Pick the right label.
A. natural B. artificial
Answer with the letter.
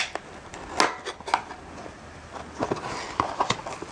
A